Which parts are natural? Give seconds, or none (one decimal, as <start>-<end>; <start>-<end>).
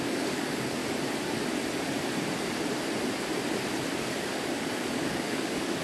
0.8-4.0